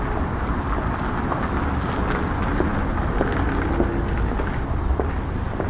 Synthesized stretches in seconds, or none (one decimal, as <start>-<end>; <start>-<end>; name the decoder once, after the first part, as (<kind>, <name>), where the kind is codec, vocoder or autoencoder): none